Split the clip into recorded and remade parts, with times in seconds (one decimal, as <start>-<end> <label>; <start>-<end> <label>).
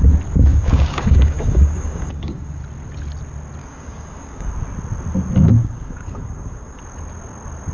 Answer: 0.0-0.5 recorded; 0.5-2.6 remade; 2.6-3.6 recorded; 3.6-4.5 remade; 4.5-5.6 recorded; 5.6-6.8 remade; 6.8-7.7 recorded